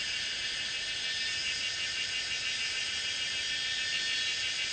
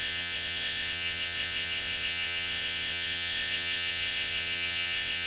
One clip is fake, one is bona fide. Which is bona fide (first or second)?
first